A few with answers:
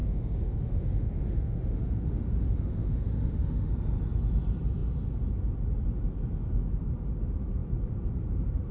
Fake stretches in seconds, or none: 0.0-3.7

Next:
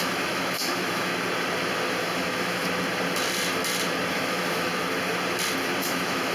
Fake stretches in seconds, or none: 0.0-1.1; 2.0-2.6; 4.1-4.7; 5.8-6.3

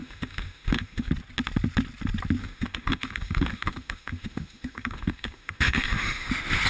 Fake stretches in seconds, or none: 0.0-1.1; 2.4-6.3

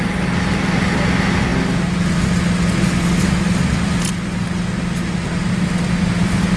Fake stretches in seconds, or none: none

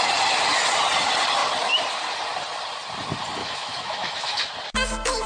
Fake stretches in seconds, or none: 3.4-4.5

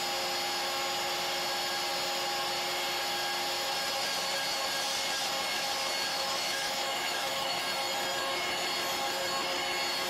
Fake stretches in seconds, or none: 6.1-7.6